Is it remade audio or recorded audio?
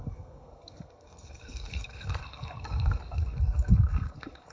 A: remade